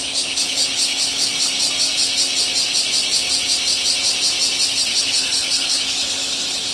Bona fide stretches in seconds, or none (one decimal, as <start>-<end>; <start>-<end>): 1.3-4.7